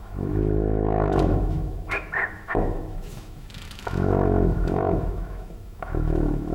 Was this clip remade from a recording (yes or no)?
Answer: yes